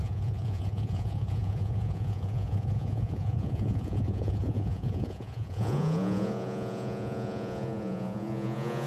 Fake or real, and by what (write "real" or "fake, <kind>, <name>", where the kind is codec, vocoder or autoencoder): fake, vocoder, Vocos